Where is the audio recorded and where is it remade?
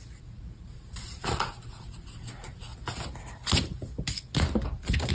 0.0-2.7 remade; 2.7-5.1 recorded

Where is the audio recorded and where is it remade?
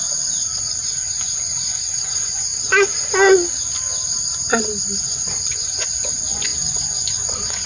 0.0-0.6 recorded; 0.6-2.5 remade; 2.5-5.0 recorded; 5.0-7.7 remade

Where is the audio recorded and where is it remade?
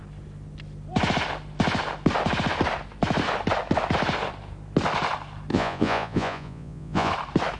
0.0-5.5 recorded; 5.5-7.1 remade; 7.1-7.6 recorded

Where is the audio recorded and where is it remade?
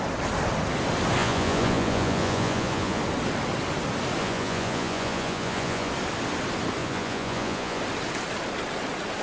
0.0-1.2 recorded; 1.2-3.0 remade; 3.0-4.2 recorded; 4.2-5.9 remade; 5.9-6.8 recorded; 6.8-7.8 remade; 7.8-9.2 recorded